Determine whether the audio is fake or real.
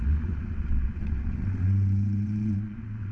fake